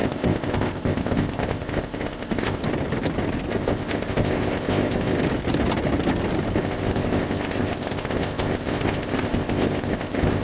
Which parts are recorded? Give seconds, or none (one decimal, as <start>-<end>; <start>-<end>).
2.6-3.5; 5.2-6.6